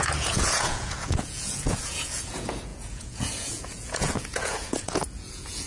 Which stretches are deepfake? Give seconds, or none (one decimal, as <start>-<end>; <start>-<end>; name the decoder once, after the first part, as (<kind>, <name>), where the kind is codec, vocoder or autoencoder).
0.0-5.7 (vocoder, Vocos)